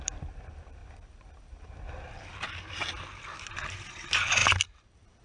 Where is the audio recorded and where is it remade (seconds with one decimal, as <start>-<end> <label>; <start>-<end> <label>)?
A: 0.0-0.8 remade; 0.8-3.9 recorded; 3.9-5.2 remade